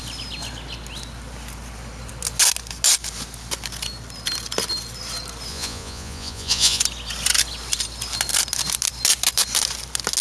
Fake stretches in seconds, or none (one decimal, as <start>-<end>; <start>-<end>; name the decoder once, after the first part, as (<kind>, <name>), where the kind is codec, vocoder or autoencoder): 5.5-6.8 (vocoder, Vocos)